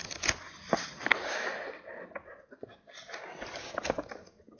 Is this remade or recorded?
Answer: recorded